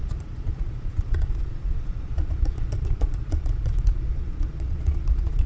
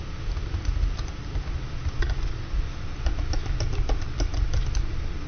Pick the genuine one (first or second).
second